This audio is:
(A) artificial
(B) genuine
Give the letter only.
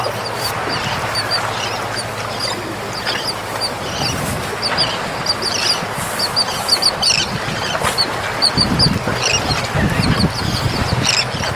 B